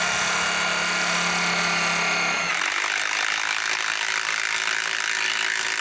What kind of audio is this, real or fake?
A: real